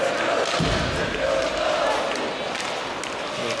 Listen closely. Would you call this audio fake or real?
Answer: real